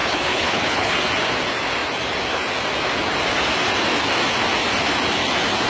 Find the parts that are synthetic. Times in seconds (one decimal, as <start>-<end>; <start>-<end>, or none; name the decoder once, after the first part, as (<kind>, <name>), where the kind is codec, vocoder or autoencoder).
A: 0.0-0.9 (codec, HILCodec)